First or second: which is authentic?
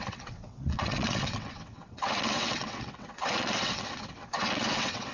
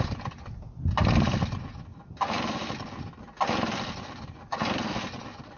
second